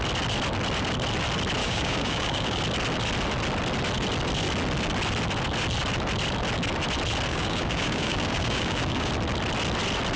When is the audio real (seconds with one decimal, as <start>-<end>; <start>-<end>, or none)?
0.0-1.6; 2.6-7.3; 9.1-10.2